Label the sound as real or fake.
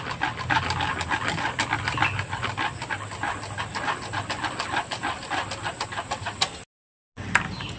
real